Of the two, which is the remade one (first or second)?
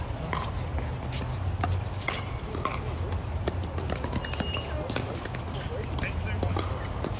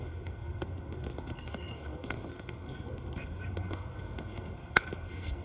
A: second